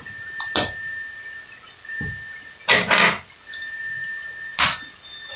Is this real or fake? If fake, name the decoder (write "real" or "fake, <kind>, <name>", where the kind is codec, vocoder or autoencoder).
real